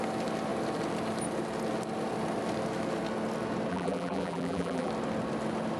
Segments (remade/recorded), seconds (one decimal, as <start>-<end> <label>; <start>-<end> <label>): 0.0-3.7 recorded; 3.7-4.9 remade; 4.9-5.8 recorded